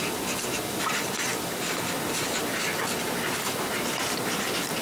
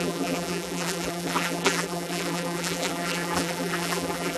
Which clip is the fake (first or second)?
second